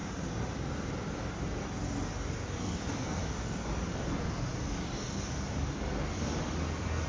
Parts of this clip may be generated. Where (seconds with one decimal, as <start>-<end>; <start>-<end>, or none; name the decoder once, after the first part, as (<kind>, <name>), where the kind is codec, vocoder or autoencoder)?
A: 2.6-3.2 (codec, SNAC)